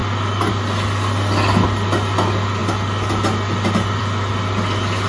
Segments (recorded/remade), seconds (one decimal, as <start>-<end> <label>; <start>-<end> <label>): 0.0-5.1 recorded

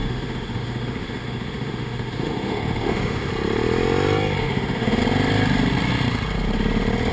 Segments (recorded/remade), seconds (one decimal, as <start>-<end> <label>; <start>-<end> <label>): 0.0-3.3 remade; 3.3-4.4 recorded; 4.4-5.0 remade; 5.0-7.1 recorded

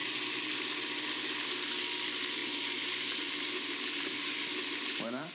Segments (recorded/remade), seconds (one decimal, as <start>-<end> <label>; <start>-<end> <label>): 0.0-2.4 recorded; 2.4-5.3 remade

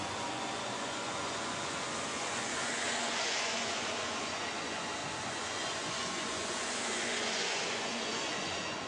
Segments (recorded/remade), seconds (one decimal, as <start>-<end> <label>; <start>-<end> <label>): 0.0-8.9 remade